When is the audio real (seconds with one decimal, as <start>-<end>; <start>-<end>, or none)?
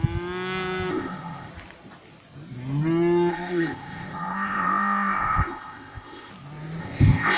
0.0-0.9; 1.5-3.3; 6.3-6.8